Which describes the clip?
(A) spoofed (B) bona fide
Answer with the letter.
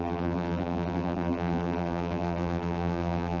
A